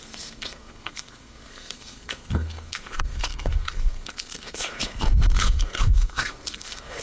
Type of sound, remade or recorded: remade